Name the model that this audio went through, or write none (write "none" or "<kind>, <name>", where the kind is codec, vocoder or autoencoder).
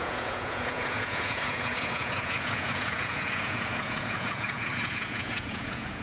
vocoder, Vocos